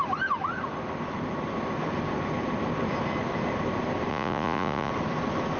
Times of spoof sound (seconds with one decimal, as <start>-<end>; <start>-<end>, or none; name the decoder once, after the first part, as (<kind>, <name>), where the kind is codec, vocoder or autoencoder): 4.1-4.9 (vocoder, Vocos)